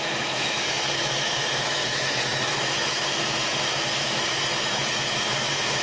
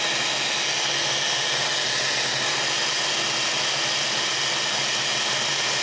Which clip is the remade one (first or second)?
first